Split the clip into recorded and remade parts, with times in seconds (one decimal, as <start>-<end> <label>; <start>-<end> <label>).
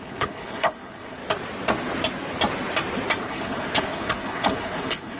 0.0-1.2 remade; 1.2-3.2 recorded; 3.2-5.2 remade